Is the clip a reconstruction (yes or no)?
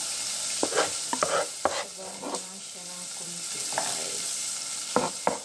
yes